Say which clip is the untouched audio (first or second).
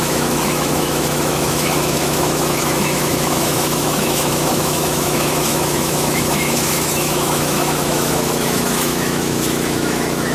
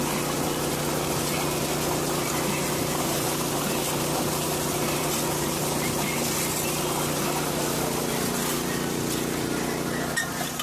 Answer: second